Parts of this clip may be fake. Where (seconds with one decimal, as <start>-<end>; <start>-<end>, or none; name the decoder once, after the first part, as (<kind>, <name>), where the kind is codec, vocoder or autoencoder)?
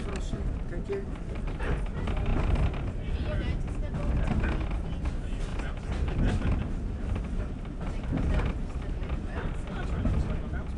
none